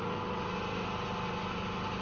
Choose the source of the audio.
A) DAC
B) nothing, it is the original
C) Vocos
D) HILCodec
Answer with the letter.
B